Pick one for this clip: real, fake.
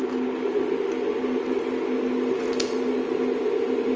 real